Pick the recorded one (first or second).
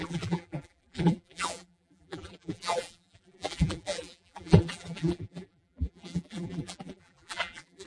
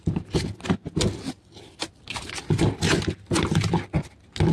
second